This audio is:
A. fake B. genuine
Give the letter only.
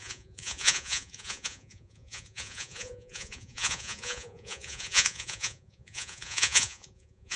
A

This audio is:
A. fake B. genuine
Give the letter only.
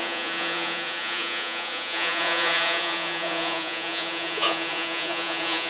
A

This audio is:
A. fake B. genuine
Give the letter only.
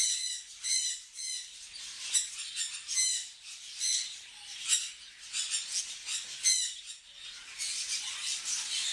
B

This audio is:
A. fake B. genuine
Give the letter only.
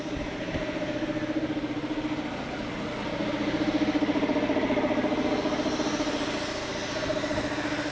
B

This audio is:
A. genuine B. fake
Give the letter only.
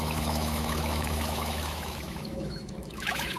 B